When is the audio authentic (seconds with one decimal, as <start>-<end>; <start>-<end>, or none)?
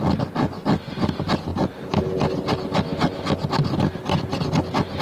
0.0-5.0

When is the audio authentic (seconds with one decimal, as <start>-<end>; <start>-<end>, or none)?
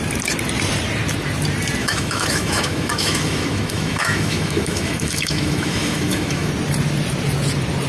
0.0-1.8; 6.5-7.9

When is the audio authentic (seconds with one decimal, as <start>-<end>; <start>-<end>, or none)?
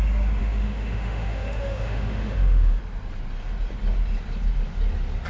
0.0-0.4; 2.8-5.3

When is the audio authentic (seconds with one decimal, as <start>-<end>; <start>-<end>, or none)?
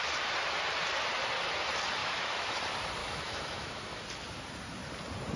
0.0-2.0; 2.6-3.0; 4.0-5.4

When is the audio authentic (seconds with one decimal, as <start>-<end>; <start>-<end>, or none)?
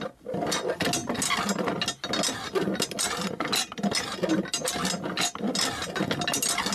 0.0-6.7